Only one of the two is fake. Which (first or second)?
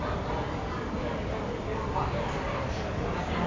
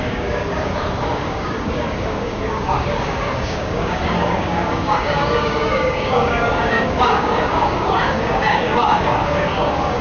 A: second